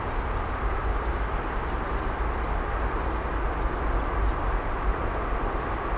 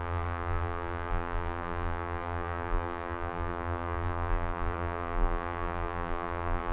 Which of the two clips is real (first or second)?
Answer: first